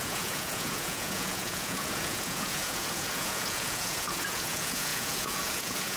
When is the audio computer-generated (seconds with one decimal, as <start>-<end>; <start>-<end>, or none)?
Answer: 0.0-6.0